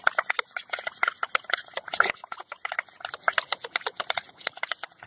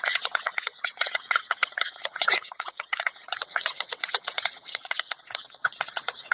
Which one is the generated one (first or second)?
second